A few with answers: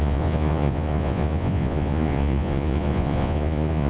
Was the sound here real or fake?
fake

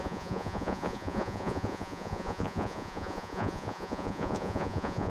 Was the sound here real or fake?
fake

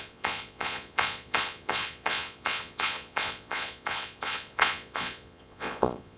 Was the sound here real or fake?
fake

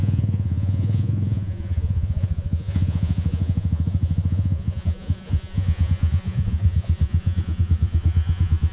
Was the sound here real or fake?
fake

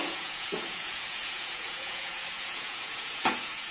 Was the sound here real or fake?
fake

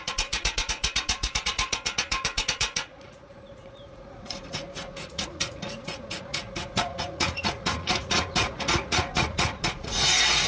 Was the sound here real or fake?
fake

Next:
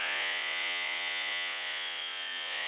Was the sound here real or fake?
fake